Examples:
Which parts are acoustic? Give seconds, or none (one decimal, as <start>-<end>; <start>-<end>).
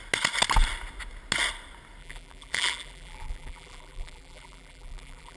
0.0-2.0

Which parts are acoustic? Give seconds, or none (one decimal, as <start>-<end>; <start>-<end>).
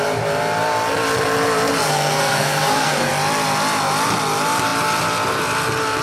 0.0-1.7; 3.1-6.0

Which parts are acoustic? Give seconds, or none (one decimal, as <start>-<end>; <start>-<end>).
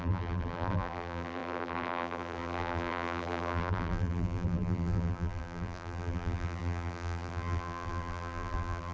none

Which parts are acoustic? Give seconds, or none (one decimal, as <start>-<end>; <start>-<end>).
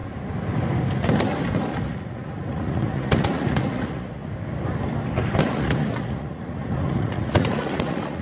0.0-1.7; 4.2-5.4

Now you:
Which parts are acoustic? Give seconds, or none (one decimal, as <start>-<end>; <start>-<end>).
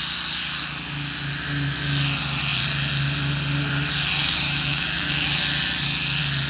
0.0-4.2; 5.4-6.5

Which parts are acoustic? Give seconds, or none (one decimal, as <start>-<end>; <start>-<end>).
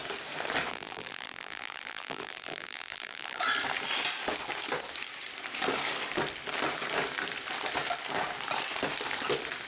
0.0-0.7; 3.4-9.7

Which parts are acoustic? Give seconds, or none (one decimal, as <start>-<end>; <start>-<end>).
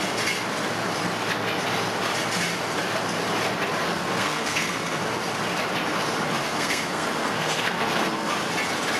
0.0-3.8; 5.0-6.4; 8.3-9.0